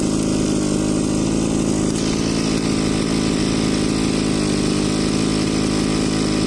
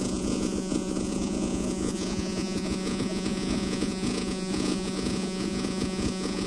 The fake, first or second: second